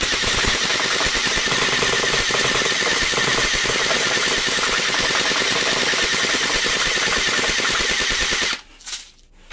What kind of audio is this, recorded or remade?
recorded